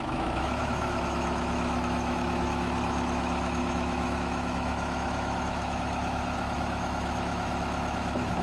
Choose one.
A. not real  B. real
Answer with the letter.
A